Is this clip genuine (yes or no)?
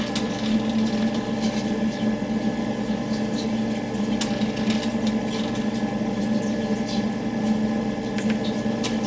yes